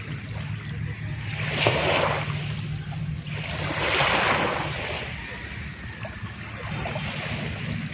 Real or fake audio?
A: real